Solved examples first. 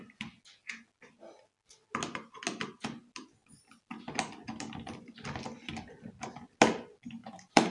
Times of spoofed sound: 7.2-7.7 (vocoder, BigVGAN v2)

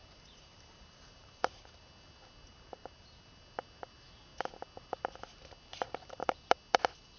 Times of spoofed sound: 0.0-1.8 (vocoder, BigVGAN v2); 2.5-3.4

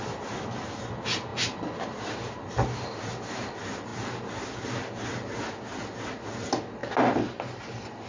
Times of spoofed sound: none